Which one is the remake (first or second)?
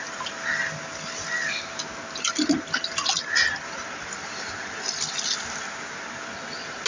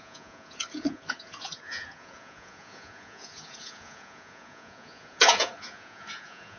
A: second